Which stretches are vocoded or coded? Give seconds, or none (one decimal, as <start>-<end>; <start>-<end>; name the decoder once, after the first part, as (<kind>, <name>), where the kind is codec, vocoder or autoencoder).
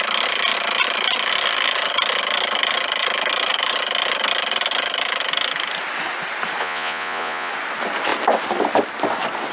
6.6-7.5 (vocoder, Vocos)